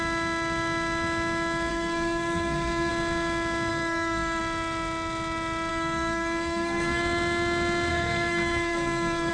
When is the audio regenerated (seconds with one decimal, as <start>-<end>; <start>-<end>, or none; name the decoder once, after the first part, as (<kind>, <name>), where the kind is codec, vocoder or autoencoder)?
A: 1.7-2.9 (codec, SNAC); 3.7-4.4; 5.7-7.0; 7.9-9.3